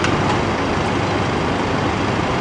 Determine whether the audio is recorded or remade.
recorded